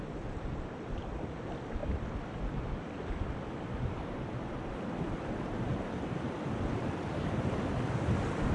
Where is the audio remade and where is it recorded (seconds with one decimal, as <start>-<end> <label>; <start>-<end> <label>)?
0.0-8.5 recorded